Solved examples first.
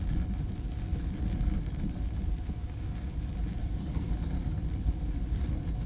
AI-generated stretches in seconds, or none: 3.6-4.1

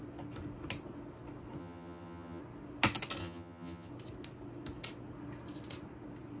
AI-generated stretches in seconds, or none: 1.6-2.4; 3.2-3.9

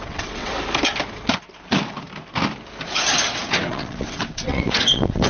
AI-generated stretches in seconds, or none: 0.0-0.5; 3.7-5.3

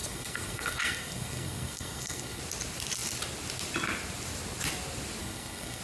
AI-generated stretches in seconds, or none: 0.0-2.4; 5.2-5.8

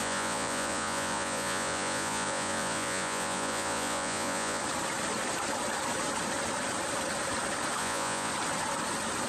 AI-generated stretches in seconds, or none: 0.0-4.6; 7.8-8.3